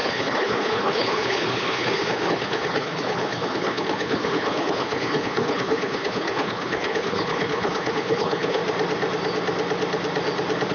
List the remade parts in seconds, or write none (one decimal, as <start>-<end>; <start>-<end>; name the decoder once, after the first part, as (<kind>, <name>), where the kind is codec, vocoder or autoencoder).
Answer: 0.0-8.6 (codec, HILCodec)